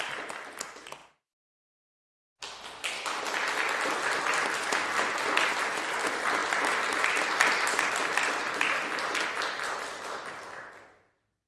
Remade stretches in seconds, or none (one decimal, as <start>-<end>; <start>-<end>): none